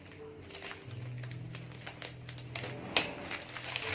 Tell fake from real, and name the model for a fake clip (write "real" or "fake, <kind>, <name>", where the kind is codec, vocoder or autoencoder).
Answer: real